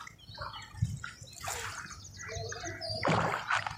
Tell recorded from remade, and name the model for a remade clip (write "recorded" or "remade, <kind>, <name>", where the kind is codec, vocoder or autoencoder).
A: recorded